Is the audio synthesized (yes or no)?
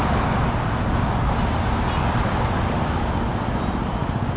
no